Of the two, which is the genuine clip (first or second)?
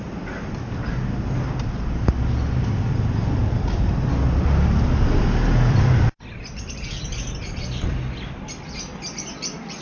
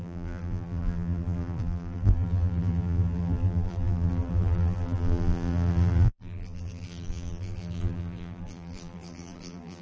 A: first